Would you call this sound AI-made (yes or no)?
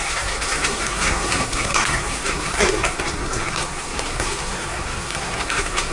yes